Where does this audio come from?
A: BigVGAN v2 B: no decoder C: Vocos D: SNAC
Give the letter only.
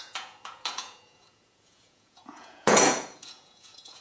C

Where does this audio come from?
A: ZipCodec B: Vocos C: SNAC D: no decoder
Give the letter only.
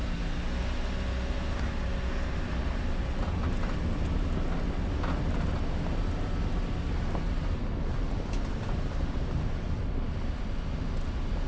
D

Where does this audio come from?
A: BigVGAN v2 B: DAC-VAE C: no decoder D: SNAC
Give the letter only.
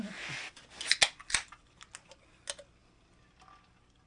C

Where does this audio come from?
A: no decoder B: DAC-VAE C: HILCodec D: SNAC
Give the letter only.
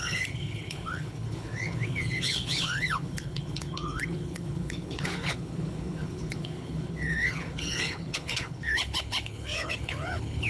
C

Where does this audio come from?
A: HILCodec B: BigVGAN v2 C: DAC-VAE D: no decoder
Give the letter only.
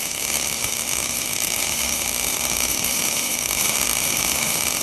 C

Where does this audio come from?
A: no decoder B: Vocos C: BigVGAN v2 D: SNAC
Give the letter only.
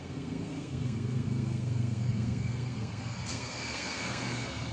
D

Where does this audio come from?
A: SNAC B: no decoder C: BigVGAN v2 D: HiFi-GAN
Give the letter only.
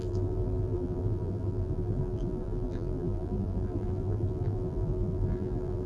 C